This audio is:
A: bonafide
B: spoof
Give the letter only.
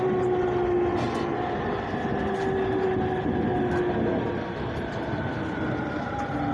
A